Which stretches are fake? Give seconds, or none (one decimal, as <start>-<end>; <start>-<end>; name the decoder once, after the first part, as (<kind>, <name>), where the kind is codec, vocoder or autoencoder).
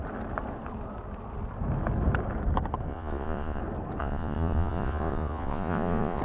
2.9-3.6 (vocoder, Vocos); 4.0-6.2